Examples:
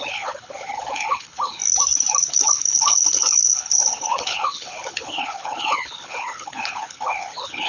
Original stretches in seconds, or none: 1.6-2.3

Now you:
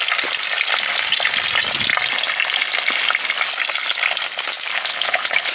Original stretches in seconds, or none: 0.0-4.7

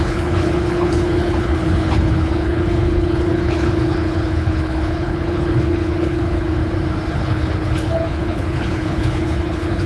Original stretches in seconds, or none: 6.6-7.1

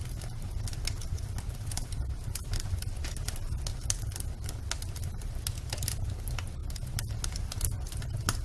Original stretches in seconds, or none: 0.0-8.4

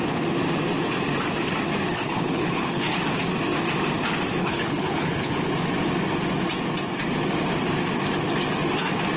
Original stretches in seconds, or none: 0.0-1.9; 3.0-4.4; 5.3-9.2

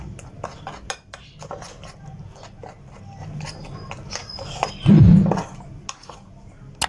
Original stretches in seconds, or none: 0.0-6.9

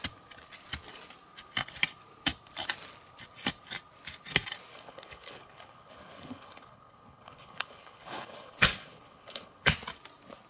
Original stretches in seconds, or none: 0.0-4.7; 9.7-10.5